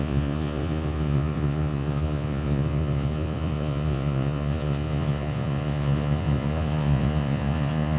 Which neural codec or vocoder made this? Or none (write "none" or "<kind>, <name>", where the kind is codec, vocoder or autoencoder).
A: vocoder, Vocos